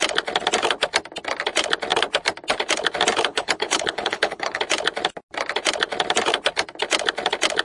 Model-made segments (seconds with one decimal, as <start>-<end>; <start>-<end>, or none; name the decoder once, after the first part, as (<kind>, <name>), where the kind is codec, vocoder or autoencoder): 3.3-4.6 (codec, HILCodec)